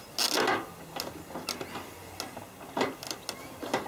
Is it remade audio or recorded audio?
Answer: recorded